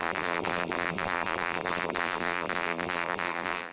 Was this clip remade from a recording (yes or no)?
yes